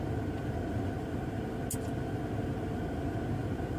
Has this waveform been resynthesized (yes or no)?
no